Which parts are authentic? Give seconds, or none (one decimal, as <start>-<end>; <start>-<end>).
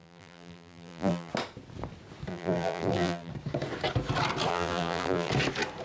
1.3-2.3; 3.3-4.5; 5.3-5.8